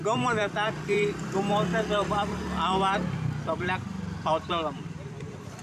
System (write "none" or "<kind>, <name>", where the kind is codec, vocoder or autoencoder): vocoder, BigVGAN v2